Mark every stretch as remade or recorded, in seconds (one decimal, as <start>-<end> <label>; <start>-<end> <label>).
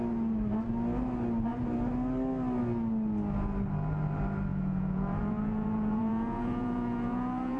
0.0-4.5 recorded; 4.5-7.6 remade